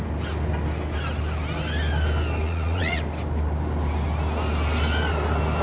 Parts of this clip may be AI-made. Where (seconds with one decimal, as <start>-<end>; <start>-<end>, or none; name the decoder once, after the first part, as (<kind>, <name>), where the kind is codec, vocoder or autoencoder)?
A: 2.4-3.0 (vocoder, Vocos)